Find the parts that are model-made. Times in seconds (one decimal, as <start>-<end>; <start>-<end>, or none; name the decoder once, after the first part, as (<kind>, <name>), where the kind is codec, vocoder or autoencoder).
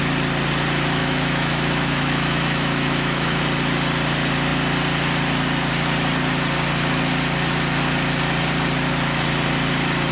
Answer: 1.0-3.4 (autoencoder, DAC-VAE)